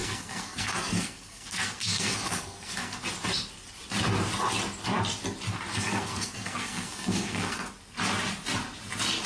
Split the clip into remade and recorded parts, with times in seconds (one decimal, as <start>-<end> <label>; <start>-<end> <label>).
0.0-3.0 remade; 3.0-5.7 recorded; 5.7-7.7 remade; 7.7-9.3 recorded